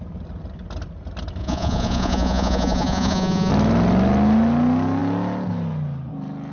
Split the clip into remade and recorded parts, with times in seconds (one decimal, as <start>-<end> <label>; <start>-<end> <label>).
0.0-1.4 recorded; 1.4-3.5 remade; 3.5-6.5 recorded